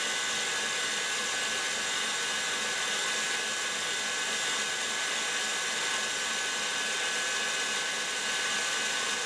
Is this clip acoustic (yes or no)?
no